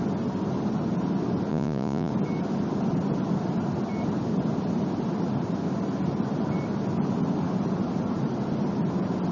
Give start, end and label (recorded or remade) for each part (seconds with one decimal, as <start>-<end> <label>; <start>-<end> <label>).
0.0-1.5 recorded; 1.5-2.1 remade; 2.1-9.3 recorded